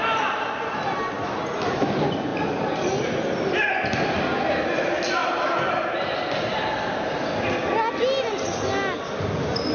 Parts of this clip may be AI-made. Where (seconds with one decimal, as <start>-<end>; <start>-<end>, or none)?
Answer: none